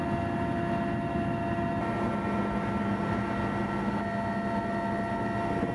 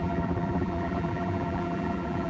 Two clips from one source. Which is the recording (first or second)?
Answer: first